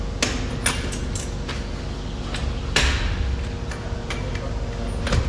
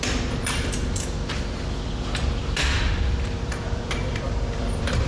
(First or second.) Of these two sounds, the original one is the first